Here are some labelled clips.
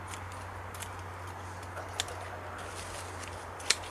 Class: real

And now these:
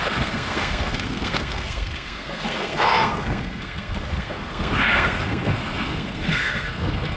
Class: fake